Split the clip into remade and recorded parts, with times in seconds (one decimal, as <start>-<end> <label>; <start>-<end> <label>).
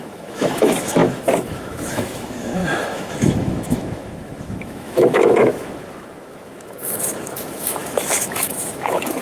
0.0-9.2 remade